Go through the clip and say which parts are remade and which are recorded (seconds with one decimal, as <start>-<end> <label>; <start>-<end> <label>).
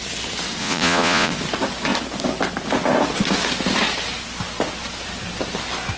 0.0-0.6 recorded; 0.6-1.3 remade; 1.3-6.0 recorded